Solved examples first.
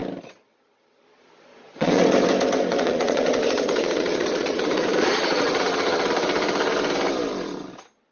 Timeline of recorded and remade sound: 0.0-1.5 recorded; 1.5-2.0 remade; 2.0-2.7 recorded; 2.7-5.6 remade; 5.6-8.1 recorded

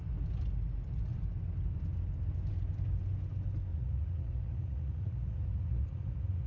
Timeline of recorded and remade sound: 0.0-3.7 recorded; 3.7-6.5 remade

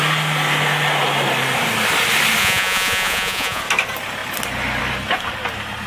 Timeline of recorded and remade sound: 0.0-2.4 recorded; 2.4-3.6 remade; 3.6-5.9 recorded

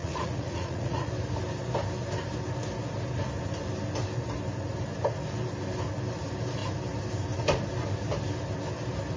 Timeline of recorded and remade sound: 0.0-1.1 remade; 1.1-9.2 recorded

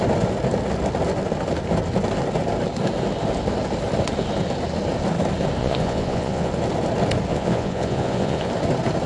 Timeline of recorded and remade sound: 0.0-5.6 recorded; 5.6-6.5 remade; 6.5-7.3 recorded; 7.3-8.5 remade; 8.5-9.1 recorded

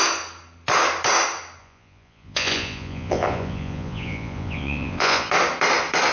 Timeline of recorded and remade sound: 0.0-1.6 recorded; 1.6-5.3 remade; 5.3-6.1 recorded

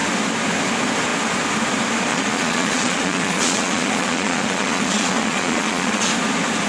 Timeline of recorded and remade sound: 0.0-2.1 recorded; 2.1-6.1 remade; 6.1-6.7 recorded